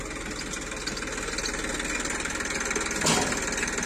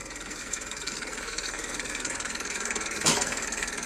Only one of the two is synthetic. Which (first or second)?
second